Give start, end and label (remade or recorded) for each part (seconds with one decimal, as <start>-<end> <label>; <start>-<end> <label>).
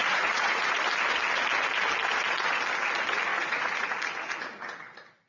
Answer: 0.0-0.8 remade; 0.8-3.3 recorded; 3.3-4.0 remade; 4.0-5.3 recorded